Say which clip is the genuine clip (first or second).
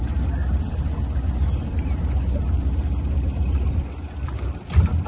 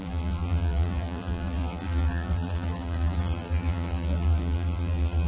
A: first